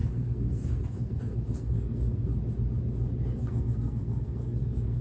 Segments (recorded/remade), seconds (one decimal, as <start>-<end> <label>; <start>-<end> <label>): 0.0-2.3 remade; 2.3-3.3 recorded; 3.3-5.0 remade

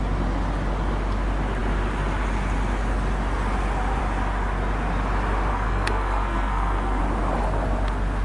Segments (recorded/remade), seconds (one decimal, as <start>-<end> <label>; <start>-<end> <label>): 0.0-5.5 recorded; 5.5-7.0 remade; 7.0-8.2 recorded

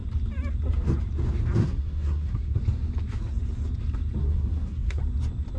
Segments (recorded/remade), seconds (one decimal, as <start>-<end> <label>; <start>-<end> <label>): 0.0-1.6 recorded; 1.6-2.6 remade; 2.6-4.2 recorded; 4.2-5.0 remade; 5.0-5.6 recorded

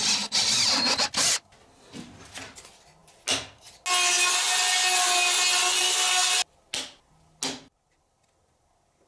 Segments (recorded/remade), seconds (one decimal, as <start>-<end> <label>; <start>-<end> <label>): 0.0-5.8 recorded; 5.8-6.3 remade; 6.3-9.1 recorded

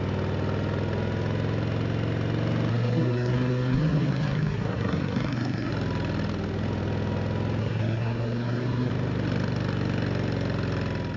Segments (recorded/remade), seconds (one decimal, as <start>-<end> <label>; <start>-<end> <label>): 0.0-2.7 recorded; 2.7-5.7 remade; 5.7-7.6 recorded; 7.6-8.9 remade; 8.9-11.2 recorded